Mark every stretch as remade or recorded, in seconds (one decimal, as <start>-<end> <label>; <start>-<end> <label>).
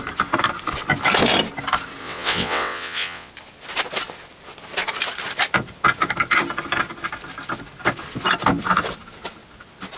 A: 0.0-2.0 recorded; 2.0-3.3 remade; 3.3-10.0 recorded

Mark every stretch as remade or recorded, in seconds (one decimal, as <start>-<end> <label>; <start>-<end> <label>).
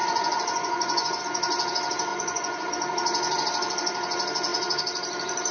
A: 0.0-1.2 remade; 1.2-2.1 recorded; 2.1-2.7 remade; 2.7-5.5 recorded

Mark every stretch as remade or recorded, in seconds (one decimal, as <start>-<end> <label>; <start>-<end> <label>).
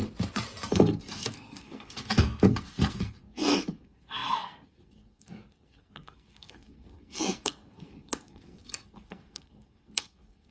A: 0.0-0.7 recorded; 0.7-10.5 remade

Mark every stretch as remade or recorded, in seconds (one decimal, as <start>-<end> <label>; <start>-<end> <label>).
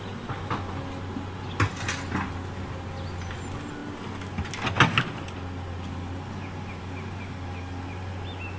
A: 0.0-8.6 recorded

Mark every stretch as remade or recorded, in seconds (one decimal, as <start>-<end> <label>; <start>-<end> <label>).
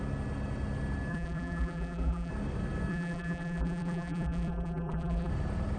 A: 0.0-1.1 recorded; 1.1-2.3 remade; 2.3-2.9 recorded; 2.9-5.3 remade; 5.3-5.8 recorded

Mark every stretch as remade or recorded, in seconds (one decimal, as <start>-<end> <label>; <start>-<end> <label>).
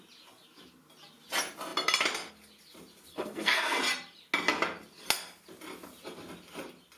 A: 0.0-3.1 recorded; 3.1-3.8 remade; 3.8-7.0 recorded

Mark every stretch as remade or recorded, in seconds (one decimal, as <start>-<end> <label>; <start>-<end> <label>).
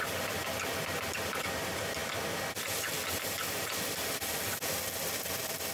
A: 0.0-5.7 recorded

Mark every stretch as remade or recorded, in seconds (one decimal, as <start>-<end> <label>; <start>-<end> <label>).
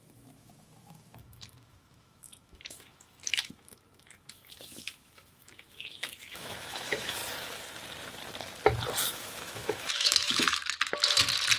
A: 0.0-7.2 remade; 7.2-9.1 recorded; 9.1-10.6 remade; 10.6-11.6 recorded